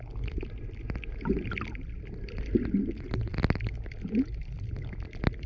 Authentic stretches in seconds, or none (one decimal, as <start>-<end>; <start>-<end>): 0.0-5.5

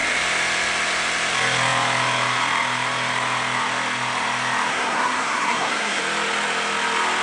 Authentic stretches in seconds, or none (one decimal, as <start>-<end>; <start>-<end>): 0.0-4.7; 6.0-7.2